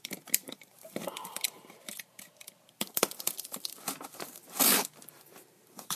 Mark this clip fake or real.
fake